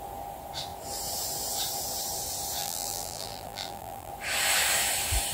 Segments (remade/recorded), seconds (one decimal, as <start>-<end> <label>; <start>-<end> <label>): 0.0-2.6 recorded; 2.6-4.1 remade; 4.1-5.3 recorded